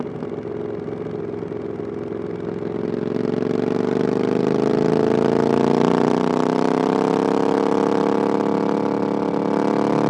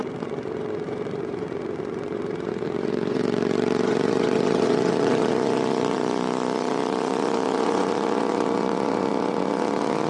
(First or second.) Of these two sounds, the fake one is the second